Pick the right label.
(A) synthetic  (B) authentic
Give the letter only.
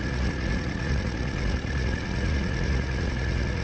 A